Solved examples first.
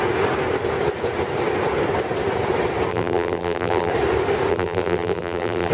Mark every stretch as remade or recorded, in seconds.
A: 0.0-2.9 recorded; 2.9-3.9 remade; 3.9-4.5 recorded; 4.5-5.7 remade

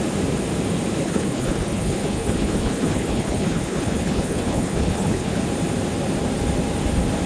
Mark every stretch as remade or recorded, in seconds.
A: 0.0-1.0 recorded; 1.0-5.4 remade; 5.4-7.3 recorded

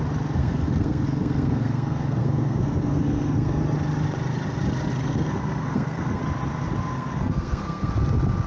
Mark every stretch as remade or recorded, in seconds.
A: 0.0-0.4 recorded; 0.4-3.6 remade; 3.6-5.0 recorded; 5.0-6.2 remade; 6.2-6.9 recorded; 6.9-7.9 remade; 7.9-8.5 recorded

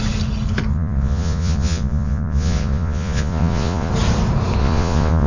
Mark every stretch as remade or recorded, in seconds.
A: 0.0-0.7 recorded; 0.7-3.9 remade; 3.9-4.6 recorded; 4.6-5.3 remade

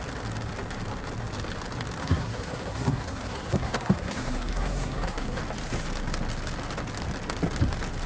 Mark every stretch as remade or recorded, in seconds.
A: 0.0-2.0 recorded; 2.0-5.4 remade; 5.4-8.1 recorded

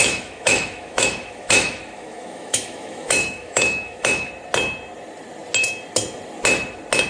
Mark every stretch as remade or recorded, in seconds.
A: 0.0-4.3 remade; 4.3-7.1 recorded

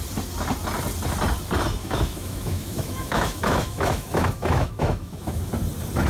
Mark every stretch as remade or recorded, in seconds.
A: 0.0-1.8 recorded; 1.8-5.5 remade; 5.5-6.1 recorded